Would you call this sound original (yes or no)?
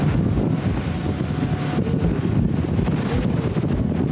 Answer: yes